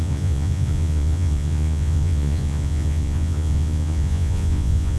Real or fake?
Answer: fake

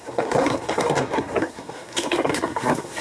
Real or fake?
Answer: fake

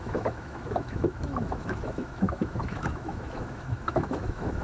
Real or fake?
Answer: fake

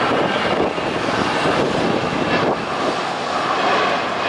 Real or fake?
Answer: real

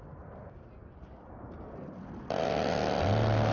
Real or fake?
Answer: real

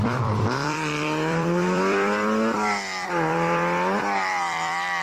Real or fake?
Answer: fake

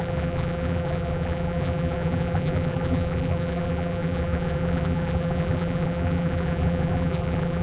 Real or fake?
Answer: fake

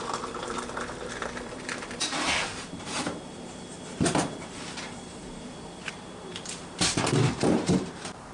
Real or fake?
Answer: fake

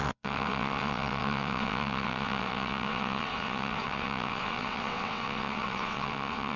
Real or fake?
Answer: fake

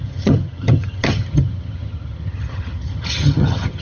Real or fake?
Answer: fake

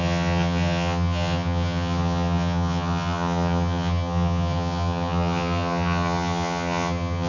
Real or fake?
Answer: fake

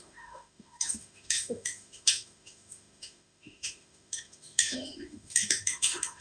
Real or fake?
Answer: fake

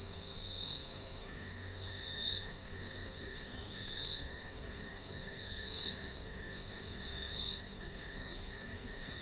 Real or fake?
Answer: fake